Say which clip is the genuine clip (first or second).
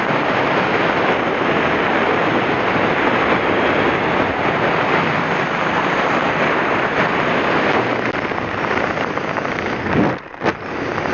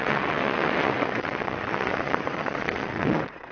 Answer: first